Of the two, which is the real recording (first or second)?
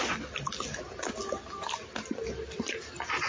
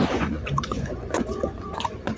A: first